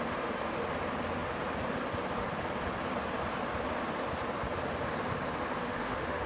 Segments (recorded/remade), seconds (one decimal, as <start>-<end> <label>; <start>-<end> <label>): 0.0-5.6 recorded; 5.6-6.3 remade